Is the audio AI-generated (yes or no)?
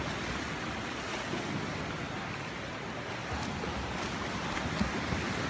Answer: no